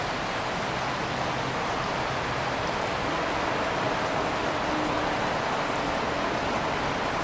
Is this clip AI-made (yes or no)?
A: no